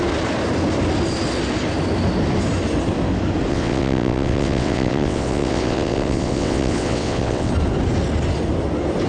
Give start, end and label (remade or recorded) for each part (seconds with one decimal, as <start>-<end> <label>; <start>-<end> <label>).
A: 0.0-3.5 recorded; 3.5-7.5 remade; 7.5-9.1 recorded